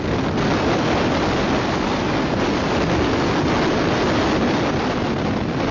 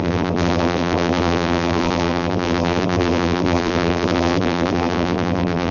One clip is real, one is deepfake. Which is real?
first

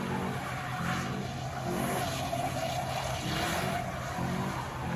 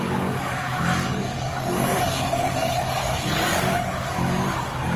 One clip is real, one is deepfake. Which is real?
first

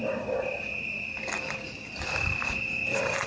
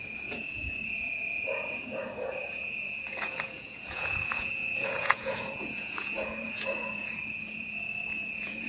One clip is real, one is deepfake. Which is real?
first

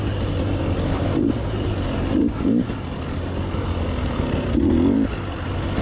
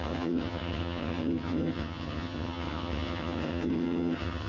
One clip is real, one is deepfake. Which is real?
first